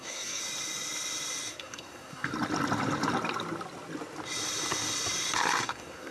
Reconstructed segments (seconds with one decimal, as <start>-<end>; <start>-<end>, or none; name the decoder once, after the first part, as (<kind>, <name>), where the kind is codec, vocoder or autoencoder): 0.0-0.4 (codec, SNAC); 1.5-2.3; 5.6-6.1